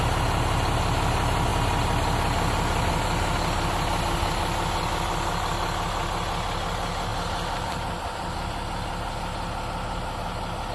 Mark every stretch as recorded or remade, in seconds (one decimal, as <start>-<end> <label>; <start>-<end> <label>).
0.0-7.1 recorded; 7.1-9.1 remade; 9.1-10.7 recorded